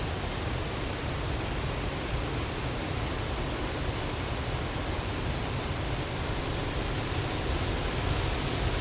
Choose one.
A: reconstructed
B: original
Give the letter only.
B